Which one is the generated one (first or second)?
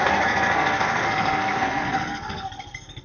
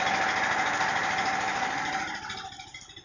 first